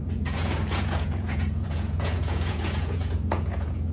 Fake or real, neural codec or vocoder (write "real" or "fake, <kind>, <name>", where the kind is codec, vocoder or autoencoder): fake, vocoder, Vocos